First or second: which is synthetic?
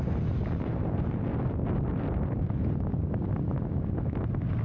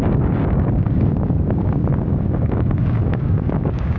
second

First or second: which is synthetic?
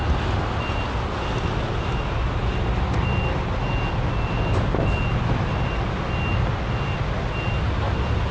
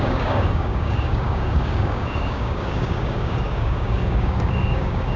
second